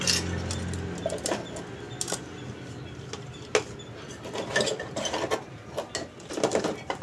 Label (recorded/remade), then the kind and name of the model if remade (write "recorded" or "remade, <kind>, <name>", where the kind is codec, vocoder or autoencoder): recorded